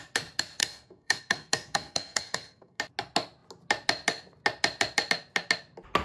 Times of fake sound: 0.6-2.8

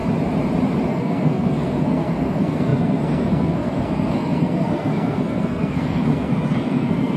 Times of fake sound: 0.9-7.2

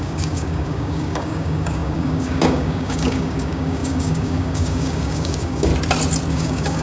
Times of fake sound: 0.0-5.7; 6.3-6.8

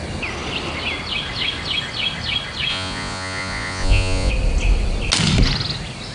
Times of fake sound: 2.7-4.3

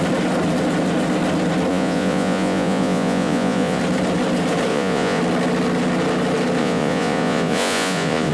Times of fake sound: 1.7-3.8; 4.7-5.2; 6.6-8.3

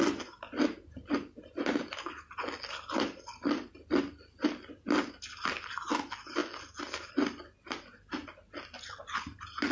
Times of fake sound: none